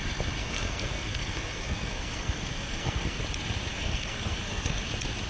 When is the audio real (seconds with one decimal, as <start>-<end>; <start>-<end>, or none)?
0.0-0.4; 3.2-3.7; 4.8-5.3